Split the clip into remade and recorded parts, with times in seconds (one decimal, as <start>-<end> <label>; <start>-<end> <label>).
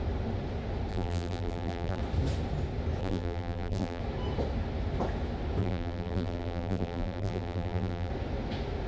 0.0-0.9 recorded; 0.9-2.0 remade; 2.0-3.0 recorded; 3.0-4.0 remade; 4.0-5.6 recorded; 5.6-8.1 remade; 8.1-8.9 recorded